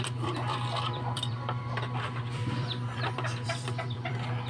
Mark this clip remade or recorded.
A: remade